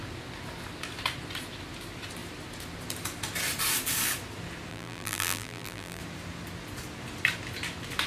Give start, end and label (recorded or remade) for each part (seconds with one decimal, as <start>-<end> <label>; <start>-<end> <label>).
0.0-4.7 recorded; 4.7-6.0 remade; 6.0-8.1 recorded